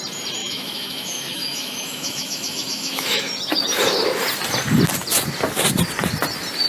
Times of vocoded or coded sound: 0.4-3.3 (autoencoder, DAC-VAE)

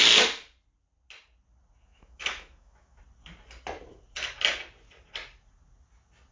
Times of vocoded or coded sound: 1.9-3.0 (autoencoder, DAC-VAE)

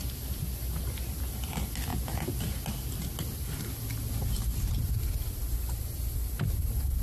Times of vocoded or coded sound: none

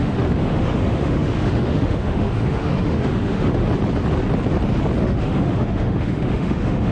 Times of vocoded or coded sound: 0.0-3.6 (autoencoder, DAC-VAE); 5.0-6.9